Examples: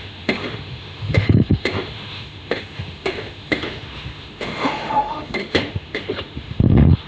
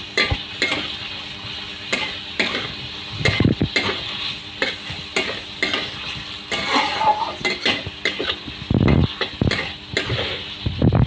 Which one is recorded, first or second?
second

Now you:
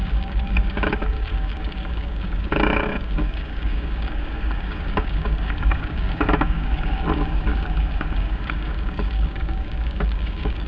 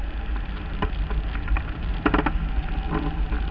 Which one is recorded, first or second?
second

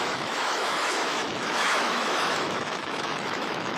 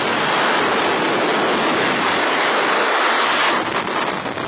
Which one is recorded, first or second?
second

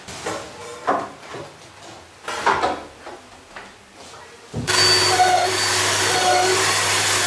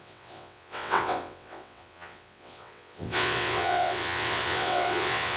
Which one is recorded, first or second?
first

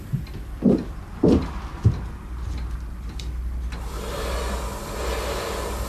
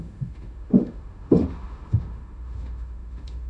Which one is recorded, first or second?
first